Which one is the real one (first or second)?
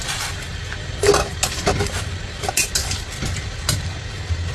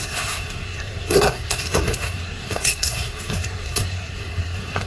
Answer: first